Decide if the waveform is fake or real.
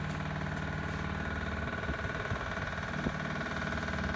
real